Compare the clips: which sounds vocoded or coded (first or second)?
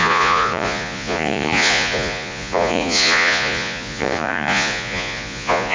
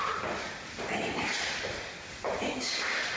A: first